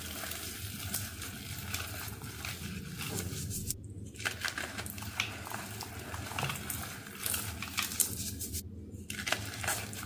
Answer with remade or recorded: recorded